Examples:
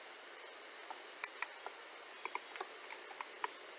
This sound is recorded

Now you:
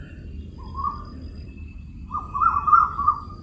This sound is recorded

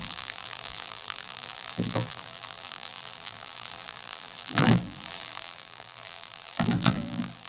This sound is remade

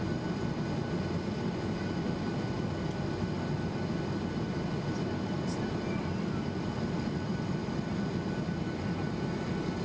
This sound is recorded